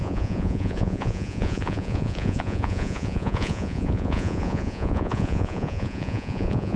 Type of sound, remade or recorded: remade